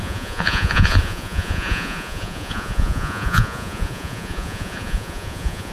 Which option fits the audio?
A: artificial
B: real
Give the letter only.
A